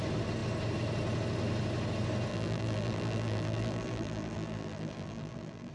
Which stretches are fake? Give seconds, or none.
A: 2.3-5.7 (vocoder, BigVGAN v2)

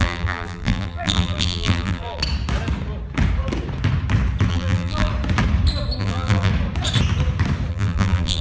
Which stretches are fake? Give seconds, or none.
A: 0.0-2.2 (vocoder, BigVGAN v2); 4.5-5.1; 6.0-6.5; 7.7-8.4

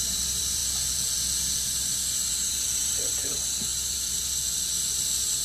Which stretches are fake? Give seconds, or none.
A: 0.0-0.6 (vocoder, BigVGAN v2); 1.7-5.4

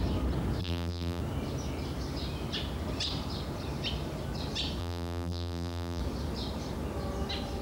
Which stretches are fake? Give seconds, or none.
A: 0.6-1.2 (vocoder, BigVGAN v2); 4.8-6.0

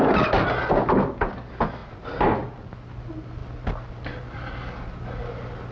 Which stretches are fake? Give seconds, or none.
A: none

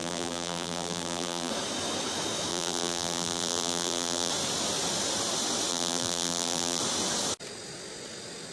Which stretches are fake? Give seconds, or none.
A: 0.0-1.5 (vocoder, BigVGAN v2); 2.5-4.3; 5.7-6.8

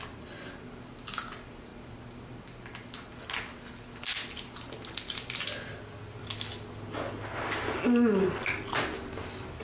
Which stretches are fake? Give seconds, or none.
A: none